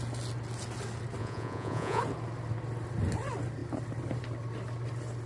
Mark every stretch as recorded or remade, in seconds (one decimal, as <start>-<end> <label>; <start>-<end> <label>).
0.0-1.2 recorded; 1.2-2.0 remade; 2.0-5.3 recorded